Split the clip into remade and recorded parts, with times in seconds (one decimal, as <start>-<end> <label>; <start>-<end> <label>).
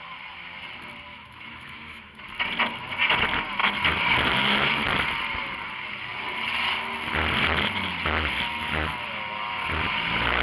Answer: 0.0-1.1 recorded; 1.1-2.2 remade; 2.2-10.4 recorded